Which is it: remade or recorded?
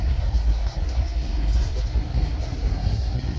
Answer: remade